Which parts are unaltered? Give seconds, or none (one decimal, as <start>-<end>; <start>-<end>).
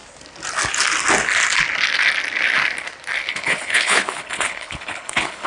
0.0-3.3